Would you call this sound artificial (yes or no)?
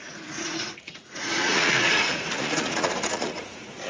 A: yes